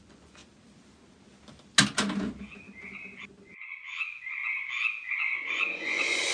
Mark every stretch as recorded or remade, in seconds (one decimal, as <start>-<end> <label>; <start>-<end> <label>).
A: 0.0-0.4 remade; 0.4-3.4 recorded; 3.4-4.4 remade; 4.4-5.1 recorded; 5.1-6.3 remade